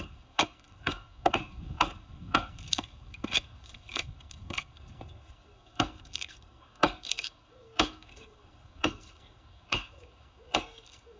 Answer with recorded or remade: remade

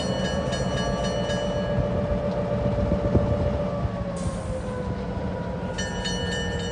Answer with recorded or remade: recorded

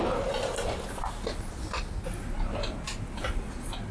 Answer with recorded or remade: recorded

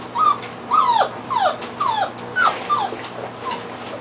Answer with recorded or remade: recorded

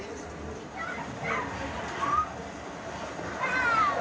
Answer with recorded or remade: recorded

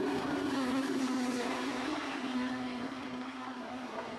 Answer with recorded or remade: remade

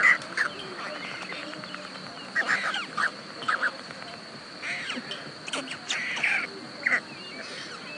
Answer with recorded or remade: recorded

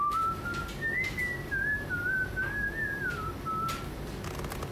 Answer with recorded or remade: recorded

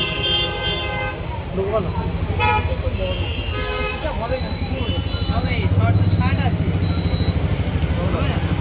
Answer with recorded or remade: recorded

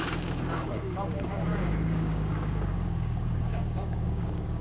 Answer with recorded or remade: remade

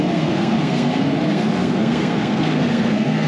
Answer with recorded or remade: remade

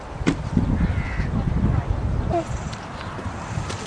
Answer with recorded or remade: recorded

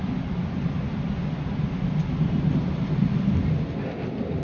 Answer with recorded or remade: recorded